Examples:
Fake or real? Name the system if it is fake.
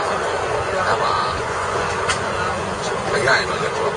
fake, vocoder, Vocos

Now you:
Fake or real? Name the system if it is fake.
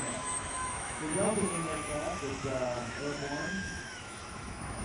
fake, autoencoder, DAC-VAE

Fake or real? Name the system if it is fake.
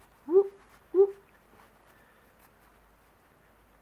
real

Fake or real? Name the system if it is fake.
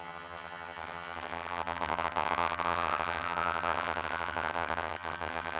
fake, vocoder, HiFi-GAN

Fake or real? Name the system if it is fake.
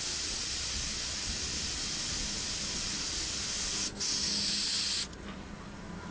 real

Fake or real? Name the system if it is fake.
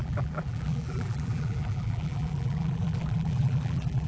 fake, vocoder, BigVGAN v2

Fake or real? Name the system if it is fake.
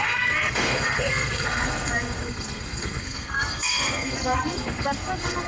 fake, codec, SNAC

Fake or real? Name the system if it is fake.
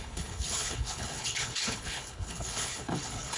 fake, codec, HILCodec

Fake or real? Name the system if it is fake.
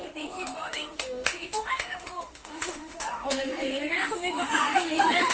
fake, autoencoder, DAC-VAE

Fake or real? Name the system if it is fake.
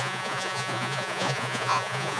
fake, vocoder, Vocos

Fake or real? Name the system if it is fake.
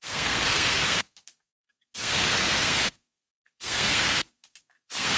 fake, codec, SNAC